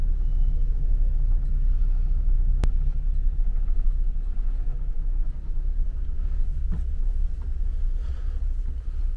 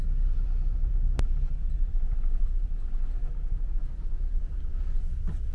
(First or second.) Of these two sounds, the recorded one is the first